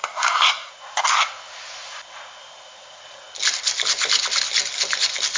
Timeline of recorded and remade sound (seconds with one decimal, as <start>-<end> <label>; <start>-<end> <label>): 0.0-0.7 remade; 0.7-5.4 recorded